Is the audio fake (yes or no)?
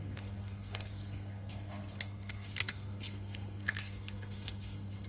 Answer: yes